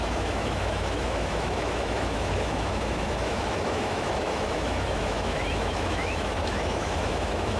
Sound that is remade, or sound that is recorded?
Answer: remade